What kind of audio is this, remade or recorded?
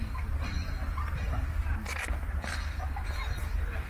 recorded